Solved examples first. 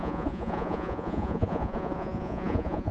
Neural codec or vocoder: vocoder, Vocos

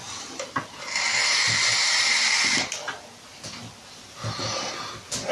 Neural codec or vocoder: none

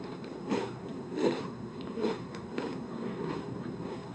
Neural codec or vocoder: codec, SNAC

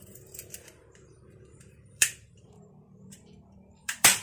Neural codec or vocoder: vocoder, BigVGAN v2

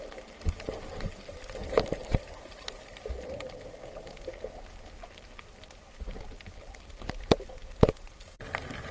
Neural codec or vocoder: none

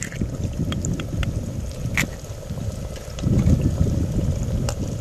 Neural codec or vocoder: none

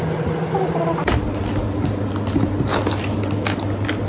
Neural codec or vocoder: none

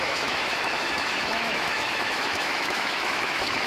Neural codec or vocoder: autoencoder, DAC-VAE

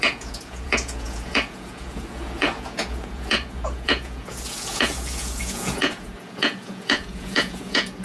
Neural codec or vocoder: vocoder, Vocos